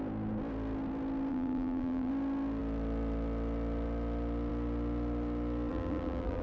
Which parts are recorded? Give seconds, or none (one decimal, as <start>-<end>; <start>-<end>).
0.0-1.3; 2.1-5.7